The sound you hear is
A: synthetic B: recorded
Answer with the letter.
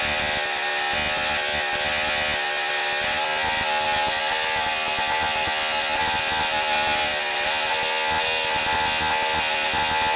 B